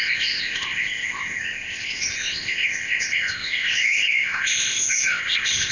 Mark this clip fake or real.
fake